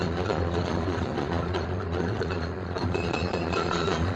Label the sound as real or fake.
fake